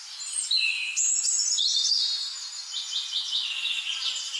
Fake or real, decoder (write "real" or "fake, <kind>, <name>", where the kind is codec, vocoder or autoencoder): real